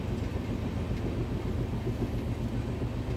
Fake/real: real